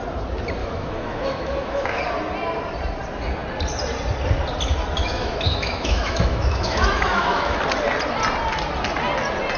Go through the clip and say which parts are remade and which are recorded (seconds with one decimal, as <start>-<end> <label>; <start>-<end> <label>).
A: 0.0-0.6 recorded; 0.6-2.0 remade; 2.0-5.0 recorded; 5.0-7.6 remade; 7.6-9.6 recorded

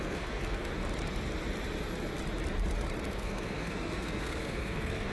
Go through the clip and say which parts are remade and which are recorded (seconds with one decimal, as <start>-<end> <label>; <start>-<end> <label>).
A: 0.0-0.7 remade; 0.7-3.1 recorded; 3.1-5.1 remade

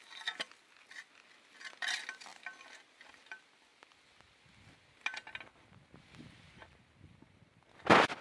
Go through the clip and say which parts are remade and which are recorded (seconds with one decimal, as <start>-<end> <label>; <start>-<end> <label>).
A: 0.0-8.2 recorded

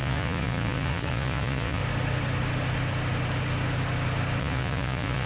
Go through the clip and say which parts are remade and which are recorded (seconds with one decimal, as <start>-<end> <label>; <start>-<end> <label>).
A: 0.0-1.8 remade; 1.8-4.4 recorded; 4.4-5.3 remade

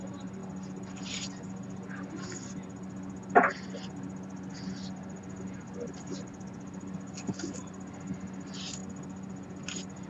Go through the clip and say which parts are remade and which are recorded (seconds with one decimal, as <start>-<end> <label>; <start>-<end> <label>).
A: 0.0-10.1 recorded

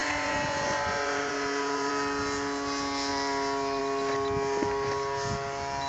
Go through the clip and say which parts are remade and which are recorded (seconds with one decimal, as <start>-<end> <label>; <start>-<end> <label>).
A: 0.0-1.9 remade; 1.9-5.9 recorded

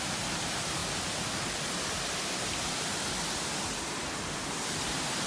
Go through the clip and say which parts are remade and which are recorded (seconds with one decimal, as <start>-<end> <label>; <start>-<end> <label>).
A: 0.0-5.3 recorded

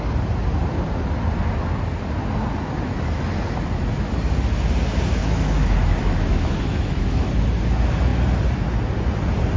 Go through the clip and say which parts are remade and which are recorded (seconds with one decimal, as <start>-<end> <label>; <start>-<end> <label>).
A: 0.0-5.2 recorded; 5.2-7.3 remade; 7.3-9.6 recorded